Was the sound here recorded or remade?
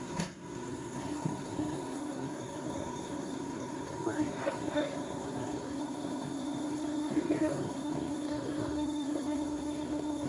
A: remade